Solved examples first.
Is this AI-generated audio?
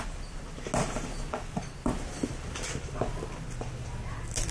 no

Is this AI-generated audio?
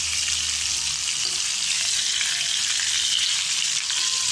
no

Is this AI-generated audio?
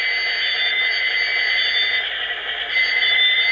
no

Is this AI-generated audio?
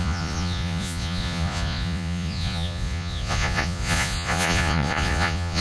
yes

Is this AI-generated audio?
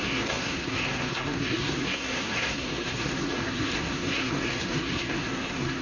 yes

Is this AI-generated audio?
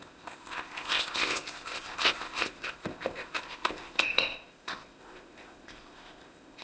yes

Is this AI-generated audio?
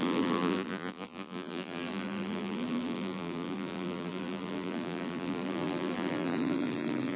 yes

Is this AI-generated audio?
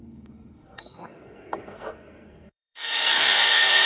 yes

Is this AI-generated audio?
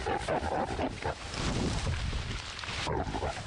no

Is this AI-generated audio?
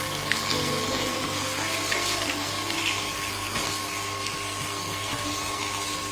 yes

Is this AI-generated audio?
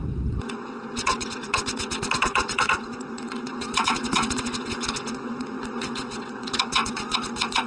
yes